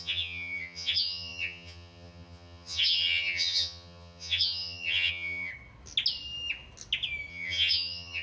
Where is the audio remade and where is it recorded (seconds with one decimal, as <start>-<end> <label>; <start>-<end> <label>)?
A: 0.0-5.5 remade; 5.5-7.3 recorded; 7.3-8.2 remade